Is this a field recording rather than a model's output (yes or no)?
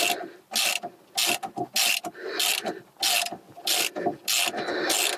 yes